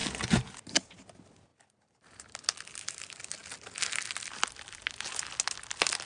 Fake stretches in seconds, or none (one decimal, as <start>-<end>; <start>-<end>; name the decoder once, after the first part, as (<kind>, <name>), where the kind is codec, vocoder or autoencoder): none